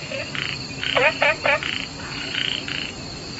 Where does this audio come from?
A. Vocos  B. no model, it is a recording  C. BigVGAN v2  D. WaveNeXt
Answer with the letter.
B